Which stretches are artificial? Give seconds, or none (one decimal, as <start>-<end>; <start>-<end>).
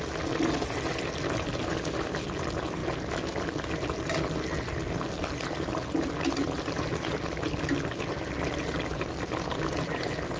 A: none